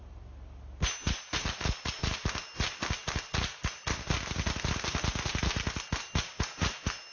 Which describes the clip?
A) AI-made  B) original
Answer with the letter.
B